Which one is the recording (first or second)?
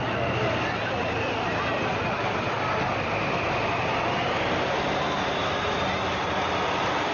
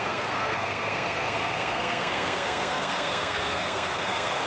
first